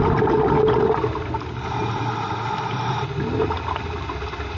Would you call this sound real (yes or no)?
yes